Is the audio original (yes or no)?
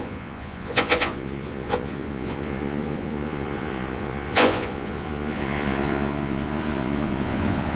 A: no